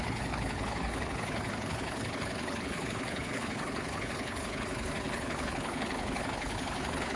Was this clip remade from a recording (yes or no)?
yes